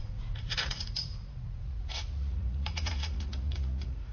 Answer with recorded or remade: remade